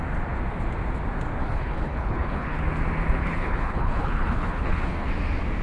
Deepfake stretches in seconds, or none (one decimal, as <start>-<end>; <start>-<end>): 1.4-2.6; 3.2-5.1